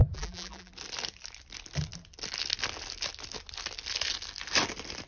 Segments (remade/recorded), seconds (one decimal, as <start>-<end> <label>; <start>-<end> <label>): 0.0-0.7 remade; 0.7-5.1 recorded